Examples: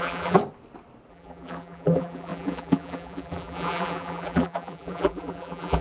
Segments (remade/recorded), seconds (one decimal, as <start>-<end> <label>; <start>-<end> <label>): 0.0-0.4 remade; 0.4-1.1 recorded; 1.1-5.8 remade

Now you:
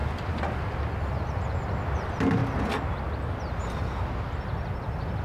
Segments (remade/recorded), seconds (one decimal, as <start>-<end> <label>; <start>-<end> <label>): 0.0-5.2 recorded

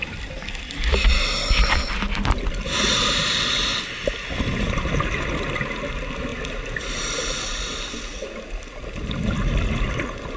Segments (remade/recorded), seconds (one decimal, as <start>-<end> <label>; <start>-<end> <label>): 0.0-10.4 recorded

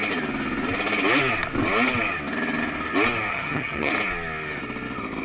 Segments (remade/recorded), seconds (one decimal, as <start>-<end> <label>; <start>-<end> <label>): 0.0-3.3 recorded; 3.3-3.9 remade; 3.9-5.2 recorded

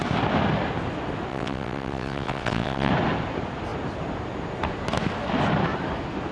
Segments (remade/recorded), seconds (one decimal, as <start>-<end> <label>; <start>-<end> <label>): 0.0-1.3 recorded; 1.3-2.9 remade; 2.9-6.3 recorded

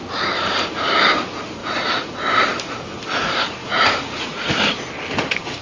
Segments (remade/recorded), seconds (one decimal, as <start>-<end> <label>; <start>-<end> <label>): 0.0-1.6 recorded; 1.6-2.1 remade; 2.1-3.6 recorded; 3.6-4.5 remade; 4.5-5.6 recorded